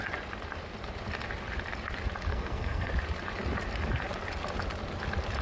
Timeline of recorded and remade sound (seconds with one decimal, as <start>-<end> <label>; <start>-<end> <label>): 0.0-2.3 recorded; 2.3-2.9 remade; 2.9-5.4 recorded